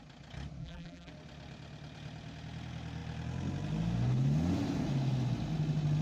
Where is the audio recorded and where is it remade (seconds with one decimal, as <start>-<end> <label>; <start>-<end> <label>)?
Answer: 0.0-0.6 recorded; 0.6-1.1 remade; 1.1-6.0 recorded